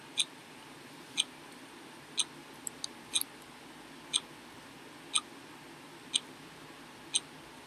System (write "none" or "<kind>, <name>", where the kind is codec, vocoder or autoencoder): none